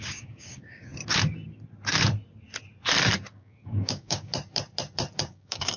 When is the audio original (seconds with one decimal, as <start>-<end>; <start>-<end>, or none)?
0.9-3.3; 4.3-5.2